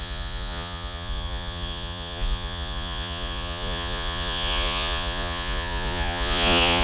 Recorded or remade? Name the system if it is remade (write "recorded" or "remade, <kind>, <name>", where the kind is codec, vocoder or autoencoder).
remade, vocoder, Vocos